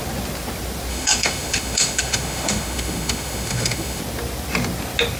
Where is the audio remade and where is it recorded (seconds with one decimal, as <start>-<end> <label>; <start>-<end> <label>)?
0.0-0.9 recorded; 0.9-4.0 remade; 4.0-5.2 recorded